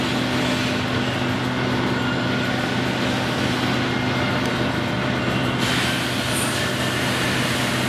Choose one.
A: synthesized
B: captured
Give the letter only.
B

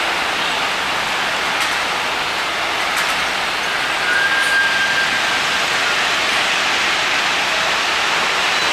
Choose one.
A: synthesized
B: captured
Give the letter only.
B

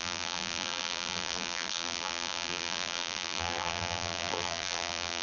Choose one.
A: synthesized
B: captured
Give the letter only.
A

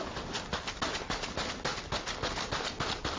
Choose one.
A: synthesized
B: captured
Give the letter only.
B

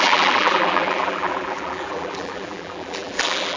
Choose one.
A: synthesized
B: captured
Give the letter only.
A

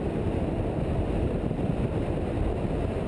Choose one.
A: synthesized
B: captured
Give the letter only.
B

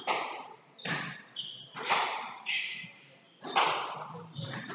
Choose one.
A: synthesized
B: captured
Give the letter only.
A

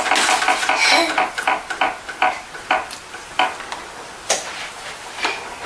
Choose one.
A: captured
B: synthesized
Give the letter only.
A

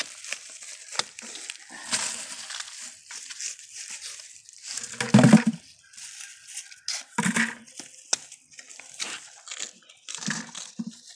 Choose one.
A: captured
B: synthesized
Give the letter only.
A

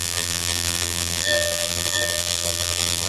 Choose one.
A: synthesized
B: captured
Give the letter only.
A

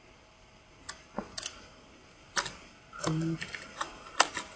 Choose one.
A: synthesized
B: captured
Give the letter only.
A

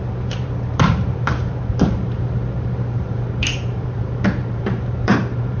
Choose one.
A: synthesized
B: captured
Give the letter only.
A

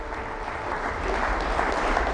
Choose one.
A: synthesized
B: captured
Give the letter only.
A